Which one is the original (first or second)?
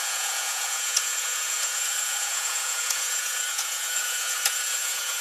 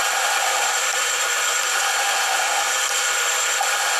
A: second